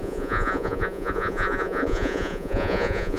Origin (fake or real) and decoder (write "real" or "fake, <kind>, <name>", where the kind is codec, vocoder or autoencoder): fake, vocoder, Vocos